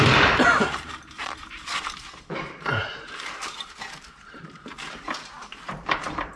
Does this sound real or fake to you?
fake